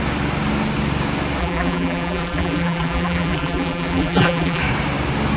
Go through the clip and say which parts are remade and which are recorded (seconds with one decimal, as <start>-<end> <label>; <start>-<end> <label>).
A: 0.0-1.4 recorded; 1.4-4.6 remade; 4.6-5.4 recorded